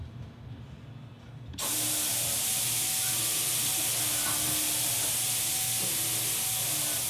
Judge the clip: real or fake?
real